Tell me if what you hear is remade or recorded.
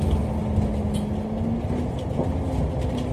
recorded